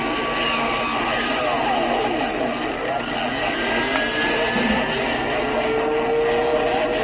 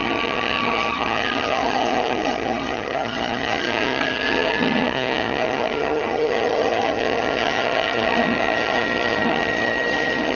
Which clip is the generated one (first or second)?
second